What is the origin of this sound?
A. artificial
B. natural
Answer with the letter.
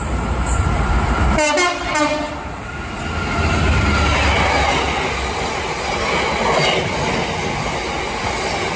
B